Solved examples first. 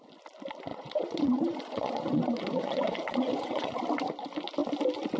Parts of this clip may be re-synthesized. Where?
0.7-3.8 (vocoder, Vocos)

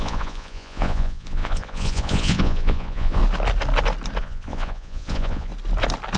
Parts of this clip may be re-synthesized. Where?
0.0-3.2 (vocoder, Vocos); 4.2-5.5

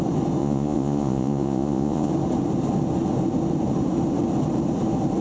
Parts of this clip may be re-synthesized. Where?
0.4-2.1 (vocoder, Vocos)